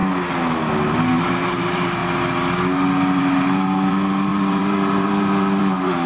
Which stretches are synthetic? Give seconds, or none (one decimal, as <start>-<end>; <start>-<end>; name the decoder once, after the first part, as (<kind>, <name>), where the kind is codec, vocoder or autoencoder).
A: 1.2-2.0 (vocoder, BigVGAN v2); 3.2-6.1